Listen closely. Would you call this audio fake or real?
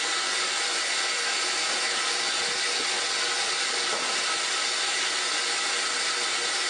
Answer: real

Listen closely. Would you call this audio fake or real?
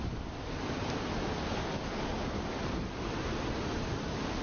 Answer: real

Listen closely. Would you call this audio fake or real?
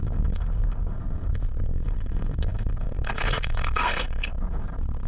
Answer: fake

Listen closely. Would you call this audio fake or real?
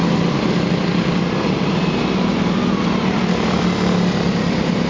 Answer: real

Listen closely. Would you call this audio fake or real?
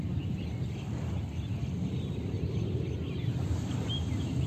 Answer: real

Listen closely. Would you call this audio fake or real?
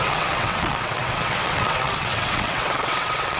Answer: fake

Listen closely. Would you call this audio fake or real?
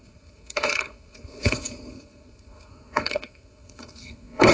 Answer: fake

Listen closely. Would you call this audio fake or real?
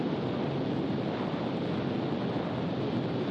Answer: real